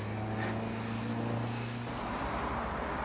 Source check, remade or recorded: recorded